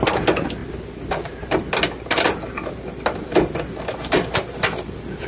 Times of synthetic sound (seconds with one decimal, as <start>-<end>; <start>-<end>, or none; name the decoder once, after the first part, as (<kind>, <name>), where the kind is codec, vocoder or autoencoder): none